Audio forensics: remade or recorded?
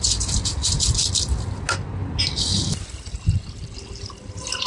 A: recorded